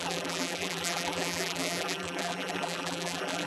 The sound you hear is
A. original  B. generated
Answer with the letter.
B